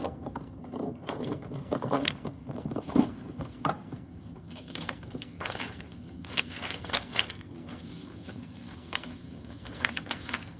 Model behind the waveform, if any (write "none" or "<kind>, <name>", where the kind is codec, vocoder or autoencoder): codec, SNAC